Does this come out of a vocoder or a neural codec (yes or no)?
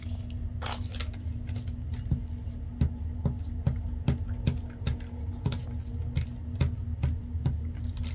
no